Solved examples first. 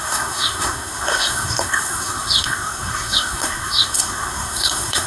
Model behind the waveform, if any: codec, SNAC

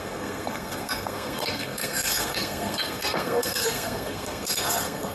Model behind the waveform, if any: codec, SNAC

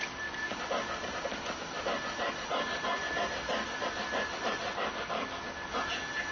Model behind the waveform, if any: none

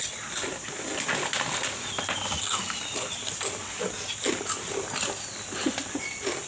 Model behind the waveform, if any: none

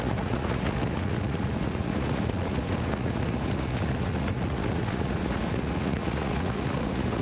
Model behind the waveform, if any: vocoder, Vocos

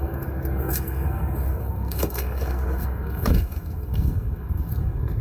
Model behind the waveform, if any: codec, SNAC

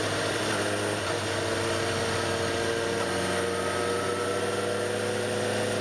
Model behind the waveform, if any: none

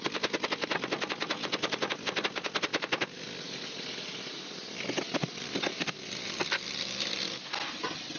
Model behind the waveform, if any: none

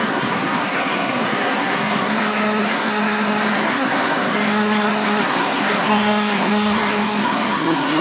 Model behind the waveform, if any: codec, SNAC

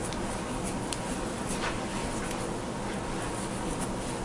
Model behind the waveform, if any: none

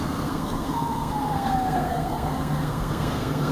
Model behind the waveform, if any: codec, SNAC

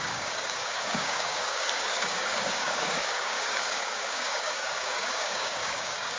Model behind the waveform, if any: codec, DAC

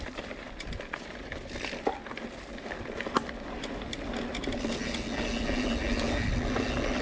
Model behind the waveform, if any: none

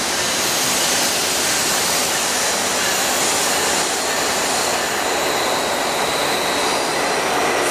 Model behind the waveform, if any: none